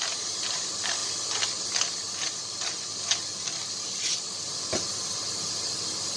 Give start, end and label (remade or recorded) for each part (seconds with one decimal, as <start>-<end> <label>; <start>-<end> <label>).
0.0-6.2 recorded